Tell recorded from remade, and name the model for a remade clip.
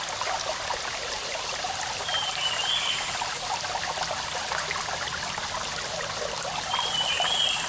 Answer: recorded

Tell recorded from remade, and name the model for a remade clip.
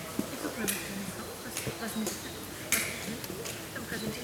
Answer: recorded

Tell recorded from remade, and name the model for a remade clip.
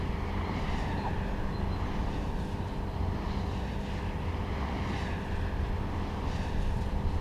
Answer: recorded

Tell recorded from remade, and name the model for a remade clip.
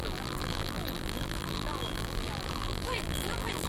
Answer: remade, vocoder, BigVGAN v2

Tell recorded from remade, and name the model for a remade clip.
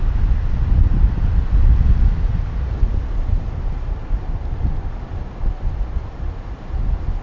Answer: recorded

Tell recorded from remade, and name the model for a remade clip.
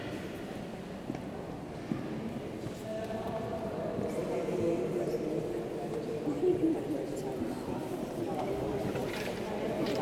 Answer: recorded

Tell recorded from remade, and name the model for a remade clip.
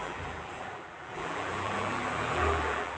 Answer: remade, vocoder, BigVGAN v2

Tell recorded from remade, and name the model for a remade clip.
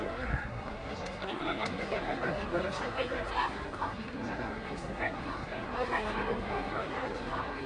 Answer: remade, codec, SNAC